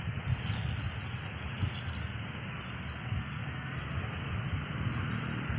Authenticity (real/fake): real